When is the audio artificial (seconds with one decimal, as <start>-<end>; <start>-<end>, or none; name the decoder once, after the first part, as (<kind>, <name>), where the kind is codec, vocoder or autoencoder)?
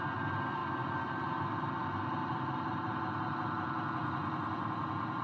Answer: 1.8-4.8 (vocoder, BigVGAN v2)